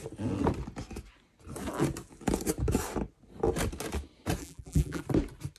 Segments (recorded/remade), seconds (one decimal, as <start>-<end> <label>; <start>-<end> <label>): 0.0-4.4 recorded; 4.4-5.0 remade; 5.0-5.6 recorded